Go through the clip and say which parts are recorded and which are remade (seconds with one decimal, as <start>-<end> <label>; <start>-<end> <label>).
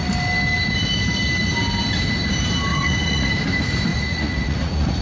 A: 0.0-2.7 recorded; 2.7-3.3 remade; 3.3-3.9 recorded; 3.9-5.0 remade